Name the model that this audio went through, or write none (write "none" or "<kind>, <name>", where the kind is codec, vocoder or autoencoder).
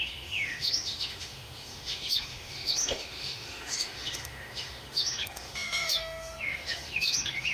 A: autoencoder, DAC-VAE